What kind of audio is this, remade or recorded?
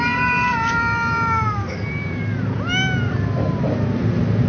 recorded